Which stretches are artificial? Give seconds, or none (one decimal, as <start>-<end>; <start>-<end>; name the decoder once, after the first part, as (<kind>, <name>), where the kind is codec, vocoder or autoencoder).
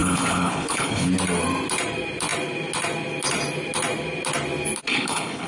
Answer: 0.0-1.1 (codec, HILCodec); 4.9-5.5